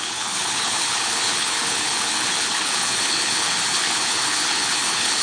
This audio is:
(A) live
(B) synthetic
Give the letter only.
B